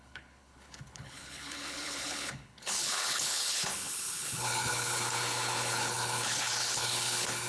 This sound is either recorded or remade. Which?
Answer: remade